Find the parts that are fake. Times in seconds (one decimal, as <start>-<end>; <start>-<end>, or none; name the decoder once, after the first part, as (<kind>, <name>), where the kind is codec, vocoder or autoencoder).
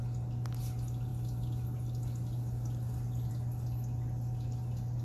none